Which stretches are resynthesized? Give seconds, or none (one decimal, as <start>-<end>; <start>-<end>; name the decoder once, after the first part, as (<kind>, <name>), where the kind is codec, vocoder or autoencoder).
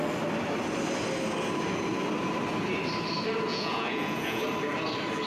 3.5-4.4 (vocoder, Vocos)